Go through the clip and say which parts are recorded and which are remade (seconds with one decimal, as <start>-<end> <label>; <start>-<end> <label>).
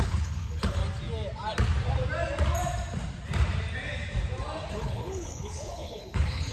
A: 0.0-0.8 remade; 0.8-4.7 recorded; 4.7-6.5 remade